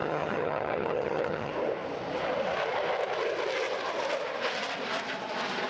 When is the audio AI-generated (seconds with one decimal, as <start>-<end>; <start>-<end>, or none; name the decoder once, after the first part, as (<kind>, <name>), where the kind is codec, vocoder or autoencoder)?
0.0-1.5 (vocoder, HiFi-GAN)

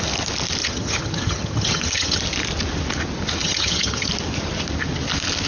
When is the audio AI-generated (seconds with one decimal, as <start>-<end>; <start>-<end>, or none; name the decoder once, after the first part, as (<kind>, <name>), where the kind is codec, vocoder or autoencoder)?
0.6-2.2 (vocoder, HiFi-GAN); 3.4-4.1